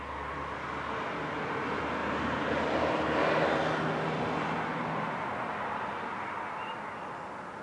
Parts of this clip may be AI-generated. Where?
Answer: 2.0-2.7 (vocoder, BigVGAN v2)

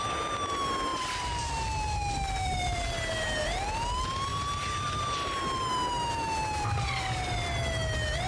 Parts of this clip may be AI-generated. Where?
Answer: 0.9-1.5 (vocoder, BigVGAN v2); 4.3-5.7

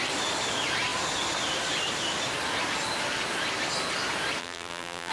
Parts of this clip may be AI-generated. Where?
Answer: 4.4-5.1 (vocoder, BigVGAN v2)

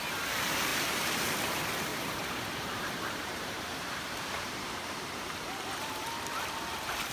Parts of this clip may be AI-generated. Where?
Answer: 0.7-1.2 (vocoder, BigVGAN v2); 1.9-6.2

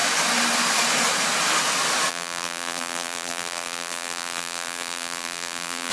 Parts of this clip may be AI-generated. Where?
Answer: 2.1-5.9 (vocoder, BigVGAN v2)

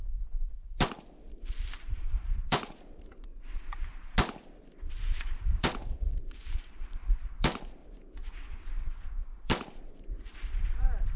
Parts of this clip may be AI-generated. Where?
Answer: 1.3-3.3 (vocoder, BigVGAN v2); 4.9-7.8; 8.8-11.2

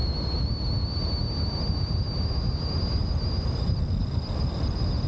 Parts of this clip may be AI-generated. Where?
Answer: none

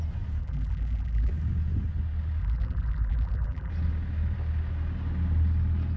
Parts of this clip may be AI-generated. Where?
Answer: 0.4-1.3 (vocoder, BigVGAN v2); 2.4-3.7